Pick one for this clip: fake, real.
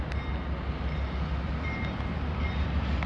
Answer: real